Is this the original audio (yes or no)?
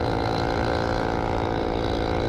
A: yes